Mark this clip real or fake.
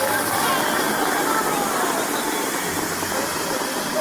real